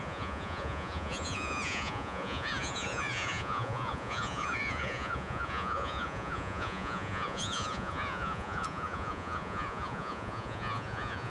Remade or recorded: remade